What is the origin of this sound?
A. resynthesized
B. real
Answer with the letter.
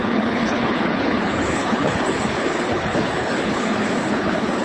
A